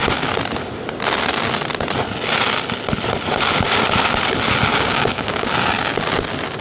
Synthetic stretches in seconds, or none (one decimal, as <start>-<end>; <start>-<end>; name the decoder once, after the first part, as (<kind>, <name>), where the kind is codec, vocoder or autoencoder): 4.7-5.5 (codec, DAC)